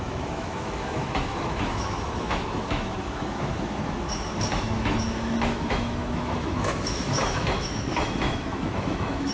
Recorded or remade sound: remade